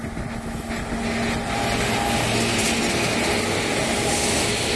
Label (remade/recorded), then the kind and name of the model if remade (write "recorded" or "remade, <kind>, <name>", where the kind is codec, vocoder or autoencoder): recorded